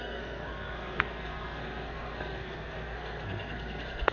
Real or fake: fake